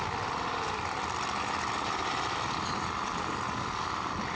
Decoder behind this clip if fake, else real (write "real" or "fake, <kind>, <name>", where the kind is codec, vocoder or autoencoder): real